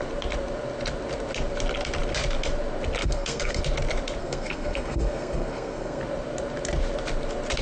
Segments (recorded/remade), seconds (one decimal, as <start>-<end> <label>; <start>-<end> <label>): 0.0-3.0 recorded; 3.0-3.6 remade; 3.6-4.2 recorded; 4.2-6.0 remade; 6.0-7.6 recorded